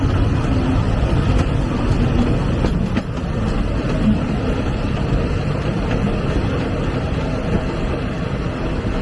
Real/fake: real